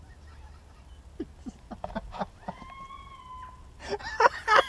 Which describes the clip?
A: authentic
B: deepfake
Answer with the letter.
A